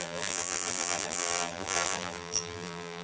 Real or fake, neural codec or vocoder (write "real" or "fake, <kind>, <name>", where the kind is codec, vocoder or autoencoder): fake, vocoder, BigVGAN v2